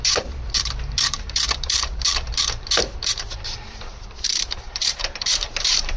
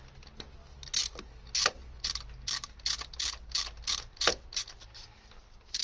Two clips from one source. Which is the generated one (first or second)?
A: first